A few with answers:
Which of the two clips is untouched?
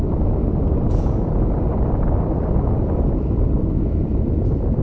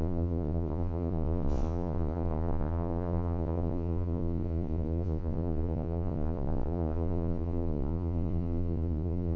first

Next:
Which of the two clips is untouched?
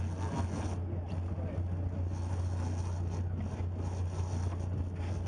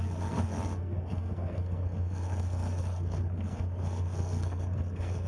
first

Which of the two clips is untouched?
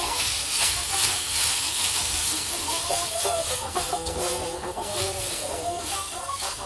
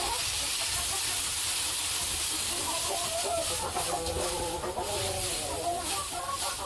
second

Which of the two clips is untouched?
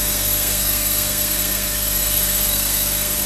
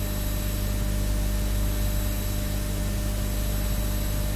second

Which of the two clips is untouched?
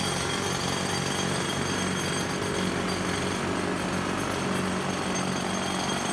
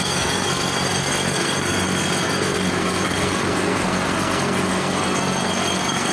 first